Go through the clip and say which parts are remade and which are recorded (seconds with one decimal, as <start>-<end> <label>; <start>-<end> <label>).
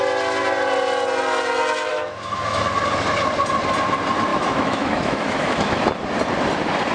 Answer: 0.0-1.9 recorded; 1.9-2.6 remade; 2.6-4.3 recorded; 4.3-5.8 remade; 5.8-6.9 recorded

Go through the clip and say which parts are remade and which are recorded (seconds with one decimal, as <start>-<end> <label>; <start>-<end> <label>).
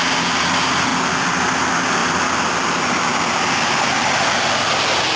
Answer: 0.0-0.5 recorded; 0.5-0.9 remade; 0.9-1.6 recorded; 1.6-2.0 remade; 2.0-5.2 recorded